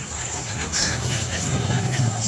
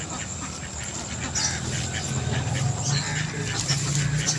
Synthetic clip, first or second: first